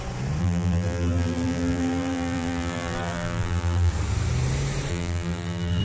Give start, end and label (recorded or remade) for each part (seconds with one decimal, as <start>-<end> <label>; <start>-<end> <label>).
0.0-0.4 recorded; 0.4-3.9 remade; 3.9-4.9 recorded; 4.9-5.8 remade